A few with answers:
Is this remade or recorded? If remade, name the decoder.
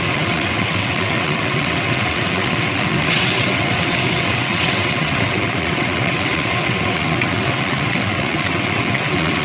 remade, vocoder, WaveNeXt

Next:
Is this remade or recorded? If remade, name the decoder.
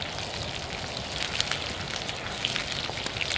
recorded